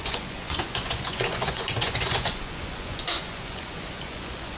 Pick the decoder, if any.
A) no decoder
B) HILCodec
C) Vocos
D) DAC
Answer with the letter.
C